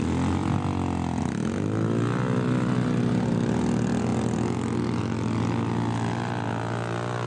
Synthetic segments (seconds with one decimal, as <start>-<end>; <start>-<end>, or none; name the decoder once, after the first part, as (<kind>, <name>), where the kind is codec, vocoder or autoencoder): none